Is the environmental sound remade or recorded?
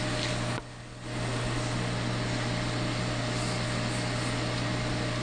recorded